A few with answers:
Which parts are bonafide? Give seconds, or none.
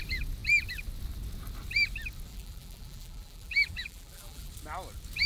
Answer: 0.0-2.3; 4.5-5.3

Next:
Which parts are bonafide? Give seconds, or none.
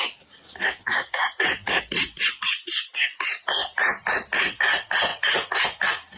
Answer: 0.0-1.2; 1.8-6.2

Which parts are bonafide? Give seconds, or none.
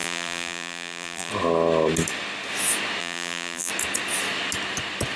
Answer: 1.3-3.0; 3.7-5.2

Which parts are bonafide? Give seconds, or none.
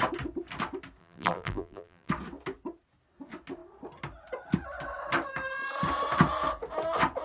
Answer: 0.0-1.0; 2.1-7.2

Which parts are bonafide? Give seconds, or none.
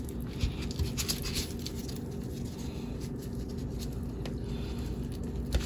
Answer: 0.0-5.7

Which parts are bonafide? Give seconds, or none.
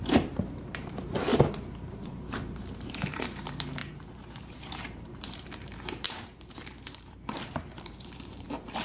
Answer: 1.3-2.0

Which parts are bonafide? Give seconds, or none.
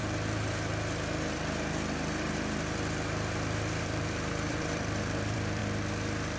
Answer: 0.0-3.8; 5.6-6.4